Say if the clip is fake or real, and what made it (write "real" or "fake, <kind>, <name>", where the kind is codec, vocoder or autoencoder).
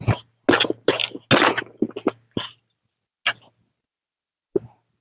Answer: real